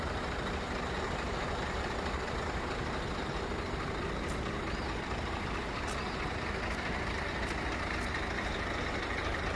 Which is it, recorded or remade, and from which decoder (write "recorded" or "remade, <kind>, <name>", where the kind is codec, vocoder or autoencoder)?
recorded